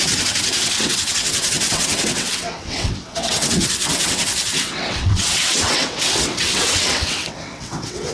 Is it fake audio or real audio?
fake